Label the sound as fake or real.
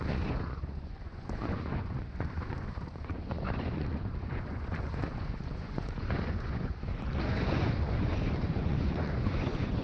fake